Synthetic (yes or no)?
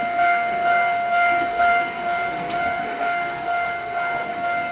yes